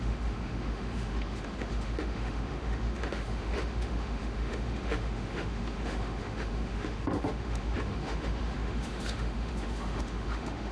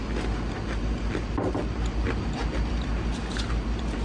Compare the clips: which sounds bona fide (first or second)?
second